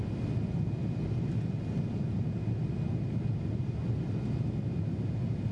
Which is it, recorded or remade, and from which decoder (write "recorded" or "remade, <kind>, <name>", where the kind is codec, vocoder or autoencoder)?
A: recorded